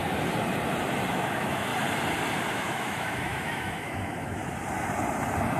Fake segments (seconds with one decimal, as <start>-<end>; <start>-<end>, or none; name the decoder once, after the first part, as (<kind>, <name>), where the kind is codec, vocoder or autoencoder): 1.1-1.7 (autoencoder, DAC-VAE); 2.5-4.4